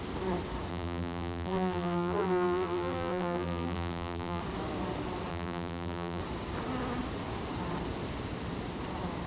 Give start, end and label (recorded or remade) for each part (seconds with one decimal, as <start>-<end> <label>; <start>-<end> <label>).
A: 0.0-0.7 recorded; 0.7-4.4 remade; 4.4-5.3 recorded; 5.3-6.2 remade; 6.2-9.3 recorded